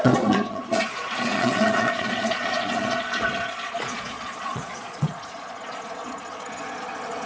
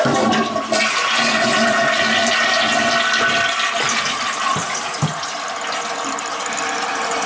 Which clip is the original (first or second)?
second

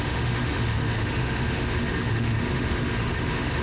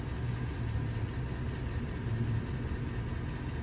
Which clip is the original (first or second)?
second